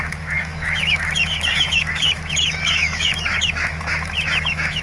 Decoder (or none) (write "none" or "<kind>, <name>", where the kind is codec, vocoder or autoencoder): autoencoder, DAC-VAE